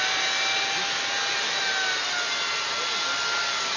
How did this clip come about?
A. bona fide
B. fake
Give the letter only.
A